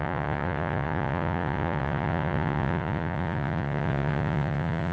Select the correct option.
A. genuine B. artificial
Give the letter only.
B